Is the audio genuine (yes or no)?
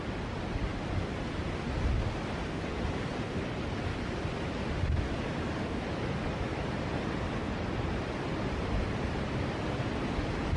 yes